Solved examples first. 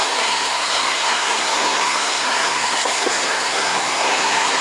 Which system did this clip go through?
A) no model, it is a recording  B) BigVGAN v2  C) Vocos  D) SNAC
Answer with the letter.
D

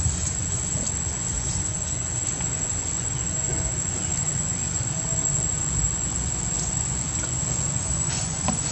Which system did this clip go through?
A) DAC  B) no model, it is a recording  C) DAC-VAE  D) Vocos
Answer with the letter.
D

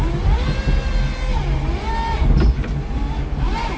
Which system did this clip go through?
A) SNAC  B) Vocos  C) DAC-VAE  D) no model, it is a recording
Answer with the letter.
D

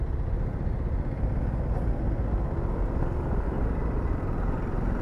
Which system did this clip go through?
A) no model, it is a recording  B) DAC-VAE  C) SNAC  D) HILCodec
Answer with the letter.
A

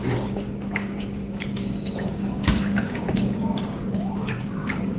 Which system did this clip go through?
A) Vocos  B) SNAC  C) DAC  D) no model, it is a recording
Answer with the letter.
C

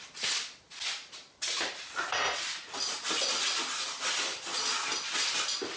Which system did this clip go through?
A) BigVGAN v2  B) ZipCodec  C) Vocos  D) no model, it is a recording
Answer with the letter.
D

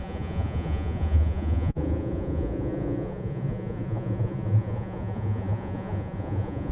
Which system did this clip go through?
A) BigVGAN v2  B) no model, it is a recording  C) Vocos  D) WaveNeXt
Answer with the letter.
C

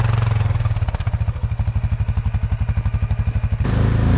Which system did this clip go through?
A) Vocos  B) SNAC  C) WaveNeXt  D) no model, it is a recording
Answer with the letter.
D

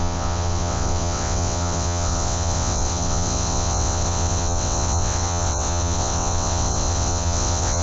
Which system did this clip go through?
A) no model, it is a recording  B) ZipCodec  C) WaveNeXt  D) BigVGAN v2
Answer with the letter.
C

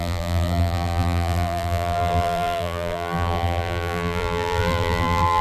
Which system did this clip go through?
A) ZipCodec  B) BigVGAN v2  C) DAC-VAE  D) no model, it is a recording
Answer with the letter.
B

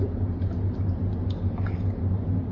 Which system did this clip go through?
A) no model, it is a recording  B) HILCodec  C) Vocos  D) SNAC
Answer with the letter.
A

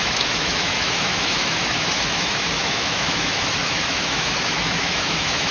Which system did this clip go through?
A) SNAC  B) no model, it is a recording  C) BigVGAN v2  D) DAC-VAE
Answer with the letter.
D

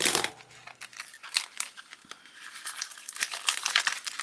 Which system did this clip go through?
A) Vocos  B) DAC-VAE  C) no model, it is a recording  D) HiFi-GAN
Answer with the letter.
C